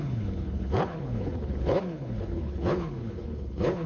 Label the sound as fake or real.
fake